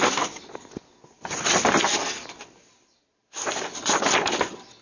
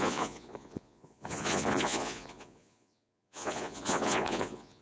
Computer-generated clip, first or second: second